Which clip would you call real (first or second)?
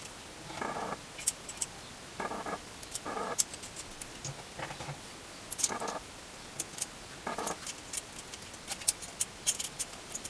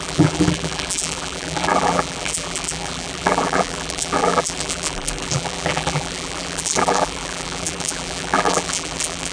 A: first